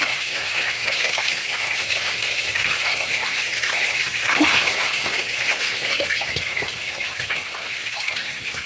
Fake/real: fake